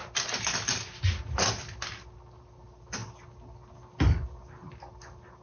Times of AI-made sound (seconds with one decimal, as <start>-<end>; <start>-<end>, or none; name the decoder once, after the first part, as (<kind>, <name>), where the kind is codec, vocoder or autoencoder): none